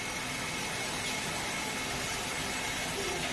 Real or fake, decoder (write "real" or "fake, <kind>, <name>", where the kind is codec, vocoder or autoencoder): real